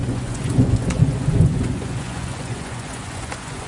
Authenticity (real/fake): fake